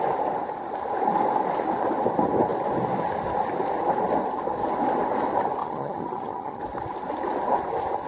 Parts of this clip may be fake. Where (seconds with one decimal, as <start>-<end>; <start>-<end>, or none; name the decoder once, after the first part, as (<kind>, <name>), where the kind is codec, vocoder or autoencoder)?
5.6-6.6 (vocoder, HiFi-GAN)